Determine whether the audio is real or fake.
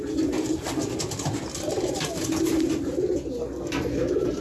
real